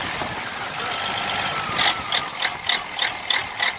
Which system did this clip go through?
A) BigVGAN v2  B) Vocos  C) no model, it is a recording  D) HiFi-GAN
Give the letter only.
C